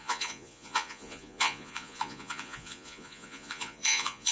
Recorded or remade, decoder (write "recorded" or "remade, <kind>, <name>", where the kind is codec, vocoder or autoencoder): remade, vocoder, Vocos